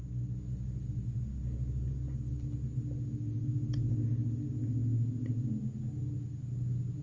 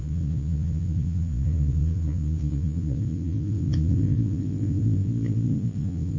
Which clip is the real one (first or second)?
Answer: first